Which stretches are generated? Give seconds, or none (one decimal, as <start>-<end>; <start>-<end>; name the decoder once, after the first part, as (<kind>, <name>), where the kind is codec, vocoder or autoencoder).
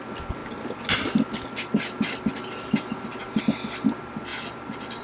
4.3-5.0 (vocoder, BigVGAN v2)